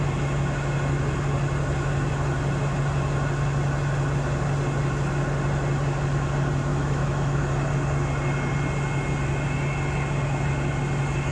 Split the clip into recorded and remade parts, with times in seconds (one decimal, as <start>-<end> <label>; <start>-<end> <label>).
0.0-6.7 recorded; 6.7-7.5 remade; 7.5-11.3 recorded